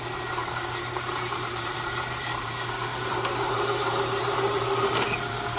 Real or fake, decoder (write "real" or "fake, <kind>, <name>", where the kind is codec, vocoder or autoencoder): fake, vocoder, BigVGAN v2